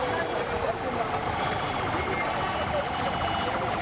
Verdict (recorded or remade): recorded